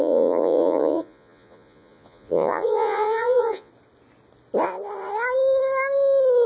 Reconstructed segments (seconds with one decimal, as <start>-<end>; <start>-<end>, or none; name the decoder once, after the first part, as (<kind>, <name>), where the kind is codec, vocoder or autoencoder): 0.0-3.7 (vocoder, Vocos)